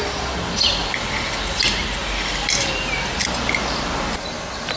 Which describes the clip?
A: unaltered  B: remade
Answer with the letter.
A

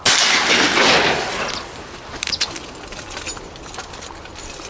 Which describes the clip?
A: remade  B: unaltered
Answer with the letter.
B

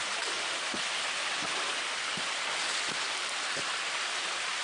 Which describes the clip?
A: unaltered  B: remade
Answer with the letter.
A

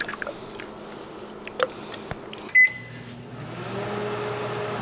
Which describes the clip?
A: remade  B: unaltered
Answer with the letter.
B